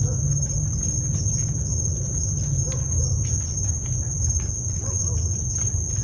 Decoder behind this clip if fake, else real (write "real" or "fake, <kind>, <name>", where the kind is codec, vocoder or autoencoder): real